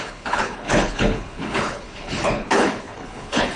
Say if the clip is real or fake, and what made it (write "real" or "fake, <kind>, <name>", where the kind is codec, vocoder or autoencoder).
fake, codec, HILCodec